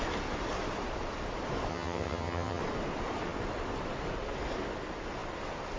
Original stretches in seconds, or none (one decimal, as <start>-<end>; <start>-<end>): 0.0-1.7; 2.6-5.8